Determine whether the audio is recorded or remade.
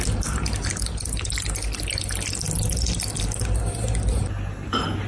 recorded